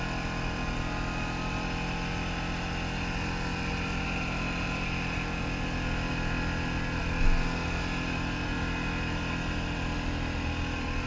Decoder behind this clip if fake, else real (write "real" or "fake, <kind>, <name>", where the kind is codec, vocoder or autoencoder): real